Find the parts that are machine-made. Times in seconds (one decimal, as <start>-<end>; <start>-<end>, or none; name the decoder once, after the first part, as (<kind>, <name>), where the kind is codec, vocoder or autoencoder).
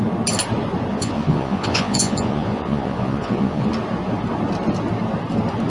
0.9-3.7 (vocoder, Vocos)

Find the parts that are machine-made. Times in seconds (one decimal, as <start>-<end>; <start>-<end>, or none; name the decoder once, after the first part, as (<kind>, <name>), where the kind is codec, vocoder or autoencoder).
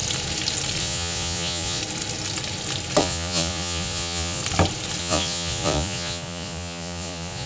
0.8-1.8 (vocoder, Vocos); 3.0-4.4; 5.0-7.5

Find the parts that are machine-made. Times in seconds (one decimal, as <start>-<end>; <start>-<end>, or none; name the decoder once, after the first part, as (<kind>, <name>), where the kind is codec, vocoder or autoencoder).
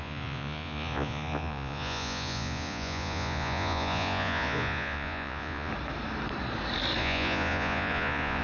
0.0-5.7 (vocoder, Vocos); 7.0-8.4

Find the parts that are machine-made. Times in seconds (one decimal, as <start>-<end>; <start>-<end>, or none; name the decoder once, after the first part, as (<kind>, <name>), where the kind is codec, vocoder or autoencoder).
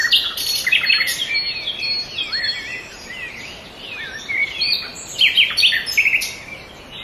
none